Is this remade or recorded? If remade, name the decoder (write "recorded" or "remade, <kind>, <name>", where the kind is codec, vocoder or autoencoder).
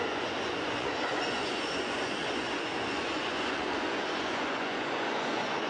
remade, vocoder, Vocos